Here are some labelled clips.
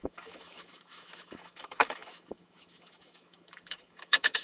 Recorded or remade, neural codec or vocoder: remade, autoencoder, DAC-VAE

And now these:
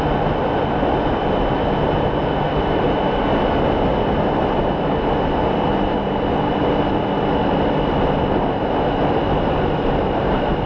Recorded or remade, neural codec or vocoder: recorded